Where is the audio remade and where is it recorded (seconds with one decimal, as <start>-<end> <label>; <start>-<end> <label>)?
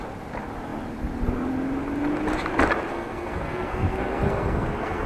0.0-2.9 recorded; 2.9-5.1 remade